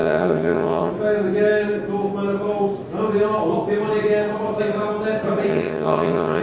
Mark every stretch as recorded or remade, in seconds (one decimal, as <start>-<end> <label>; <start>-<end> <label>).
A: 0.0-0.9 remade; 0.9-5.5 recorded; 5.5-6.4 remade